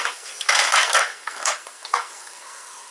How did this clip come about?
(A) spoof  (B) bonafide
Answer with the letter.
A